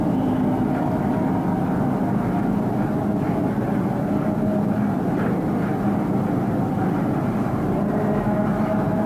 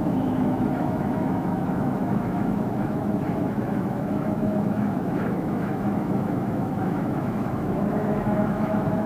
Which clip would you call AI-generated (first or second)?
second